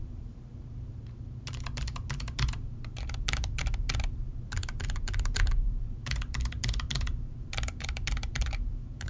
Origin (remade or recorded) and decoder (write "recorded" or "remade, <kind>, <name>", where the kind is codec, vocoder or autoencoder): remade, vocoder, BigVGAN v2